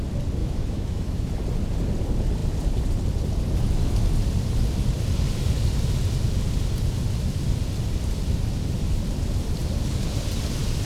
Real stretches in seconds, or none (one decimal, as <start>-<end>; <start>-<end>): 0.0-0.4; 1.3-10.9